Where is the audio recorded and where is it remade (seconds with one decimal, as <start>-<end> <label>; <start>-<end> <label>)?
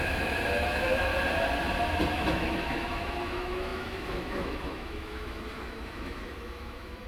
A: 0.0-1.1 remade; 1.1-2.1 recorded; 2.1-7.1 remade